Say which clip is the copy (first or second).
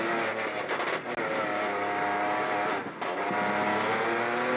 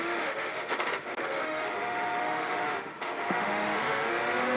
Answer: second